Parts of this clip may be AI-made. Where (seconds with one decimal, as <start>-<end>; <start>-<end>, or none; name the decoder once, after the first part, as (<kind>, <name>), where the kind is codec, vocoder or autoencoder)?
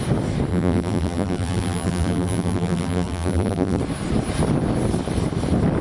0.5-3.8 (vocoder, BigVGAN v2)